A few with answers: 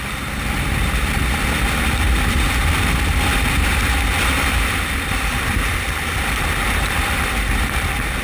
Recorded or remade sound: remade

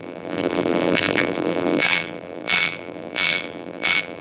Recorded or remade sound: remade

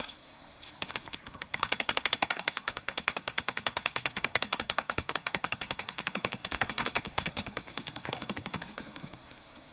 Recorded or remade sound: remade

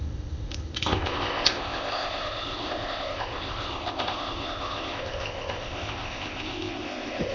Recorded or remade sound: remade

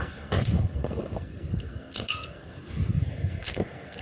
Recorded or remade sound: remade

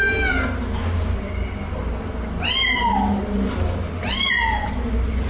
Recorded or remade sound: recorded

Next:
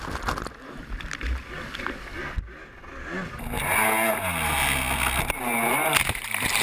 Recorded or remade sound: recorded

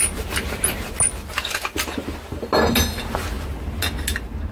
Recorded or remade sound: recorded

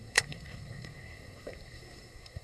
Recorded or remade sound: remade